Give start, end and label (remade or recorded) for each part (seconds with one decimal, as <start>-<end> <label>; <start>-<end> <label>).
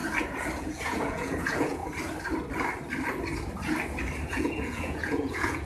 0.0-0.6 recorded; 0.6-1.8 remade; 1.8-4.3 recorded; 4.3-5.7 remade